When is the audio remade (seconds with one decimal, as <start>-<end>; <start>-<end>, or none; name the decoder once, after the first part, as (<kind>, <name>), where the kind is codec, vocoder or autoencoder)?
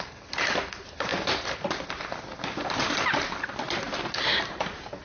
none